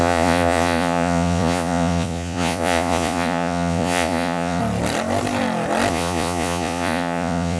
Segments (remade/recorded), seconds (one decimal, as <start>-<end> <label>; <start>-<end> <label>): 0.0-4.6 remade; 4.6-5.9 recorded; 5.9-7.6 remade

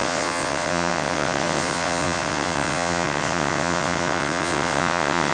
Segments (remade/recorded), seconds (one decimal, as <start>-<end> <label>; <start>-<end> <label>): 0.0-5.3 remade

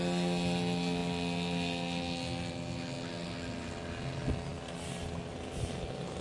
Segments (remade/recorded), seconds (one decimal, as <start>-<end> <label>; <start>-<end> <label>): 0.0-6.2 recorded

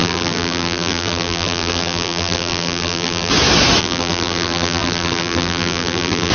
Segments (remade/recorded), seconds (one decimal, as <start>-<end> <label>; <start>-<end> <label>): 0.0-3.3 remade; 3.3-3.8 recorded; 3.8-6.3 remade

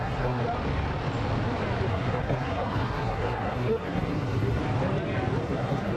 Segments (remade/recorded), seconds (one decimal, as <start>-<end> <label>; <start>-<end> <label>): 0.0-0.4 remade; 0.4-1.9 recorded; 1.9-4.6 remade; 4.6-5.4 recorded; 5.4-6.0 remade